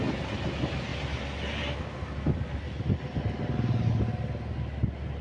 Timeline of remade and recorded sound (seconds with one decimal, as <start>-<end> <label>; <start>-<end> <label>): 0.0-5.2 recorded